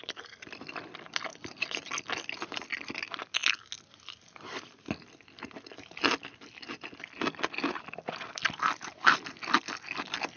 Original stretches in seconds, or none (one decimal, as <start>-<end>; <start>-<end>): 0.0-10.4